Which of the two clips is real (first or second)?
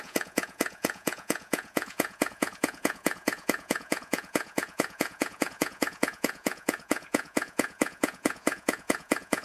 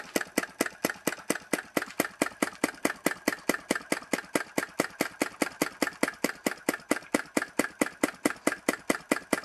second